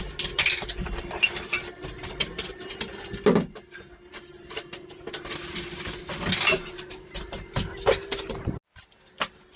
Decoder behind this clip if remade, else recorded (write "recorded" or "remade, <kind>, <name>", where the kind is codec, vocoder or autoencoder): recorded